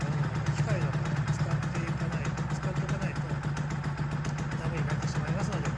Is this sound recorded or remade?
recorded